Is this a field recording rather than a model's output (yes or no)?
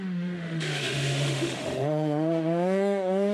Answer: no